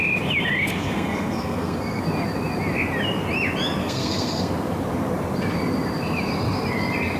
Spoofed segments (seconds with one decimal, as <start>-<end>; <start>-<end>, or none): 0.7-2.0; 3.8-4.5

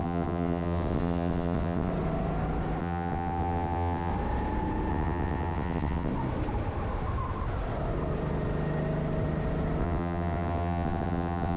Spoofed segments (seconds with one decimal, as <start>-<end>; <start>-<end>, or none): 0.0-1.9; 2.8-4.1; 4.9-6.1; 9.8-11.6

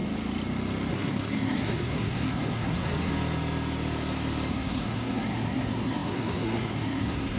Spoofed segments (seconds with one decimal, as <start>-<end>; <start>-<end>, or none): 0.9-3.1; 4.5-7.4

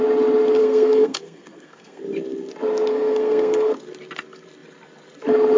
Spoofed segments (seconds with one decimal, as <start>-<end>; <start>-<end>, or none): 0.6-2.0; 2.9-3.7

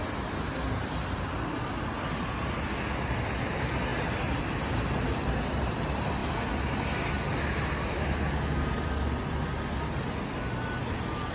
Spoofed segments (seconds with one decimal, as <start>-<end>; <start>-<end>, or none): none

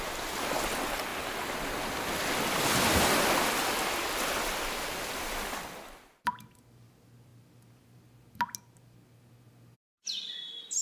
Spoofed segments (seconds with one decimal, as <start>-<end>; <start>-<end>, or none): none

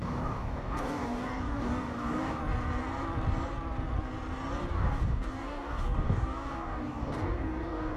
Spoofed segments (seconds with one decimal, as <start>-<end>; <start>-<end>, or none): 0.0-2.4; 4.7-8.0